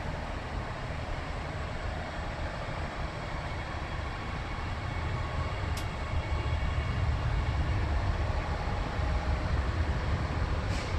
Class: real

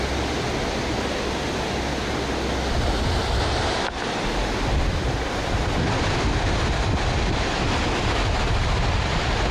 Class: real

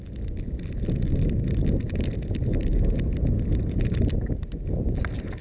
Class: real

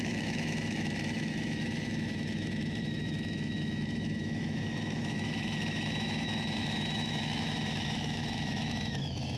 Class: fake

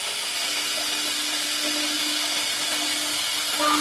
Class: real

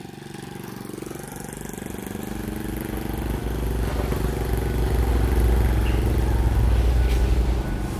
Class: real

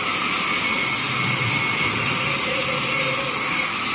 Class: real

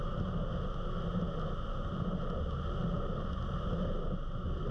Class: real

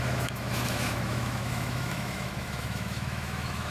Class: fake